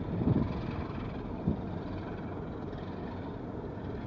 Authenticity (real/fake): real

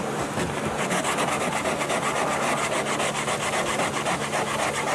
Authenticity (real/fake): real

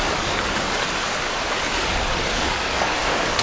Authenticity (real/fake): fake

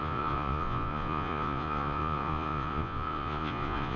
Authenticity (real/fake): fake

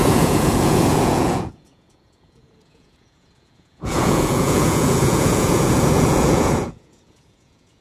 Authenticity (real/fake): fake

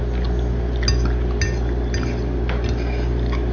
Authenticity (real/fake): real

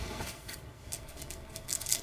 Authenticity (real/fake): fake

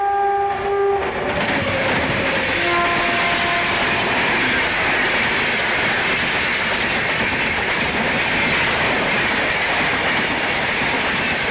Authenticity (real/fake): real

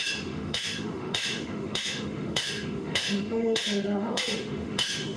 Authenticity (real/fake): fake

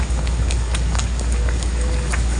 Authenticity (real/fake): fake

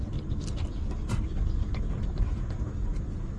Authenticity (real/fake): real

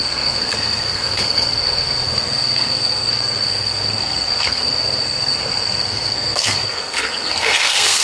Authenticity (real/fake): fake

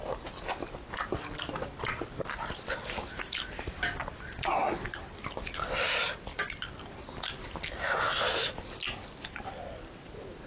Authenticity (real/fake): real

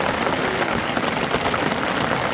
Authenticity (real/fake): real